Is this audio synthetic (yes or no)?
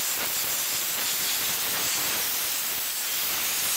no